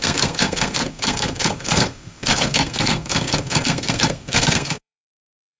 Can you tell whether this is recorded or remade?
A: remade